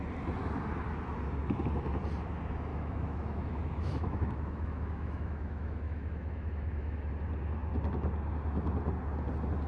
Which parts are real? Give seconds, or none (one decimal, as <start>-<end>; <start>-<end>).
0.0-2.7; 7.1-9.7